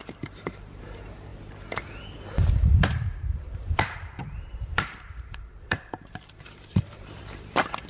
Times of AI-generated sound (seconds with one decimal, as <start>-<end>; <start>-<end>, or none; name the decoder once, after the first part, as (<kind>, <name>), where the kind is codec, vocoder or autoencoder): 0.0-1.3 (vocoder, BigVGAN v2); 2.5-7.9